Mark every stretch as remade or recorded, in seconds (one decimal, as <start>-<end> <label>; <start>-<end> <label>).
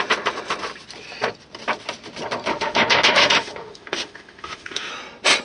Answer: 0.0-2.5 recorded; 2.5-4.9 remade; 4.9-5.4 recorded